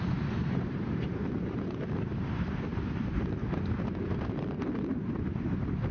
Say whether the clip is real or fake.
fake